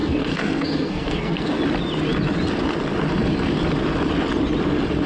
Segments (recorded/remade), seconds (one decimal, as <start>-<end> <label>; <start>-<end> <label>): 0.0-1.6 remade; 1.6-5.1 recorded